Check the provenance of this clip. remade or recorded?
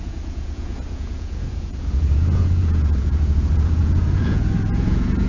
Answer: remade